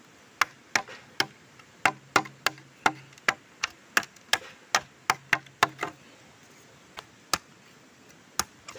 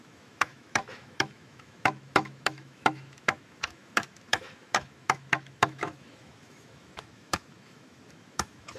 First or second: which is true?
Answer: first